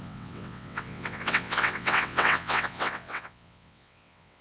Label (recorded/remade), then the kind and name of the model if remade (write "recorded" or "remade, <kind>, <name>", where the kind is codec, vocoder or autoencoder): remade, vocoder, WaveNeXt